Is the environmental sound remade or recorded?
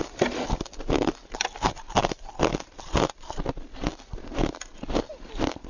recorded